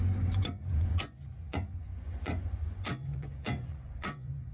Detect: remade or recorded remade